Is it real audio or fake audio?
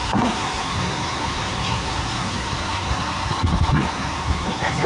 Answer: fake